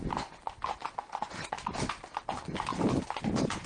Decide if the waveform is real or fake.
real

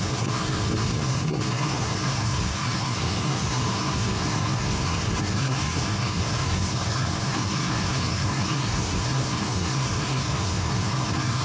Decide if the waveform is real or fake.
fake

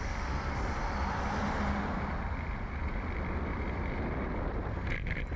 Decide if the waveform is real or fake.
real